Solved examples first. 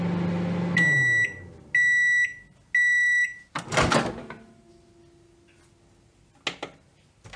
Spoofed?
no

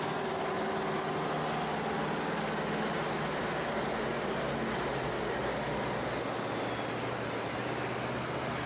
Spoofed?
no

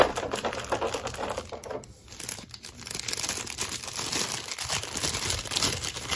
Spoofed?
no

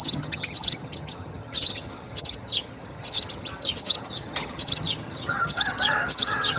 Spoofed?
yes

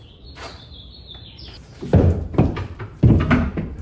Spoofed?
yes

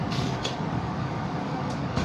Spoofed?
yes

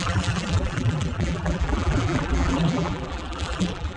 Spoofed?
yes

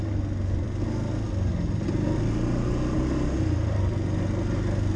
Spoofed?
no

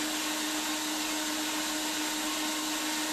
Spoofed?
no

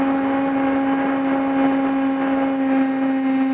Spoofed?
no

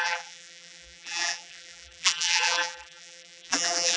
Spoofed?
yes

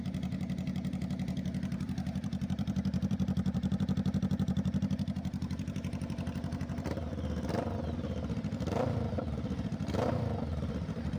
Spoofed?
yes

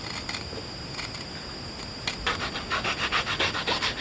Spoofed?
no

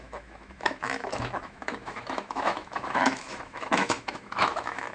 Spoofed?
yes